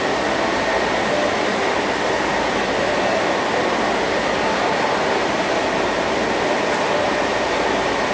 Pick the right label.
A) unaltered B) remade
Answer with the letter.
A